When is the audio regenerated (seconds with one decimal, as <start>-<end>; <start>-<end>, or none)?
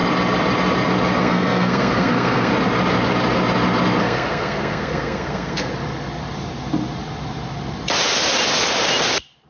1.2-2.5; 4.0-5.7